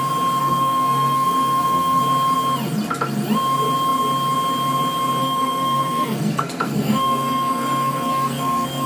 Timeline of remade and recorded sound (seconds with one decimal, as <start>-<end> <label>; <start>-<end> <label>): 0.0-0.4 recorded; 0.4-2.0 remade; 2.0-5.2 recorded; 5.2-8.9 remade

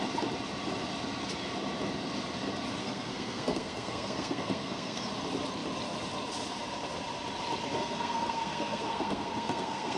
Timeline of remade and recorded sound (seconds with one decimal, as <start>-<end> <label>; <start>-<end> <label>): 0.0-2.8 recorded; 2.8-5.0 remade; 5.0-7.8 recorded; 7.8-10.0 remade

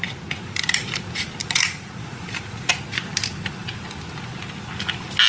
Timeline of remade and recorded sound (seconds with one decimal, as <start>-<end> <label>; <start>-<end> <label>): 0.0-1.4 recorded; 1.4-2.7 remade; 2.7-5.3 recorded

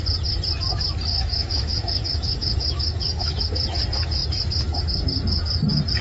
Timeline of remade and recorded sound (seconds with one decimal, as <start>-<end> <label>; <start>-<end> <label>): 0.0-1.1 recorded; 1.1-3.4 remade; 3.4-6.0 recorded

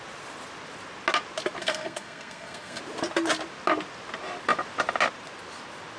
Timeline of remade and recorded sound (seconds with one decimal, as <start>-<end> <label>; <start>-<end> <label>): 0.0-1.6 recorded; 1.6-2.8 remade; 2.8-6.0 recorded

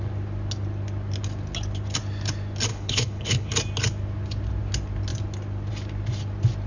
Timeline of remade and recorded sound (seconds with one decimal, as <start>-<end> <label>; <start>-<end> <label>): 0.0-2.7 recorded; 2.7-3.5 remade; 3.5-6.7 recorded

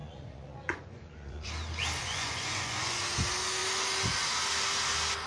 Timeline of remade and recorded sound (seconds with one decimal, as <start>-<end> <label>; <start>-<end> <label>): 0.0-1.5 remade; 1.5-2.0 recorded; 2.0-3.0 remade; 3.0-5.3 recorded